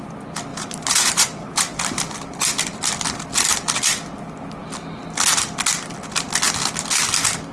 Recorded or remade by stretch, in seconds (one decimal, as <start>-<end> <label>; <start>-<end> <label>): 0.0-0.5 recorded; 0.5-2.9 remade; 2.9-7.5 recorded